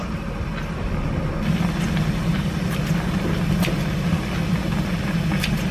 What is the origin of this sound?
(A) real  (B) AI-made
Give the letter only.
A